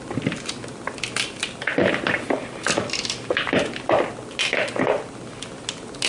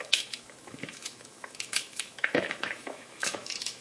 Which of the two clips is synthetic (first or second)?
second